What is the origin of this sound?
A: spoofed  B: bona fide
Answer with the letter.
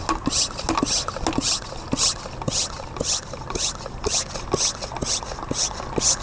B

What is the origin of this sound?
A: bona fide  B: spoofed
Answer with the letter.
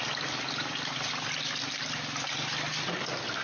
A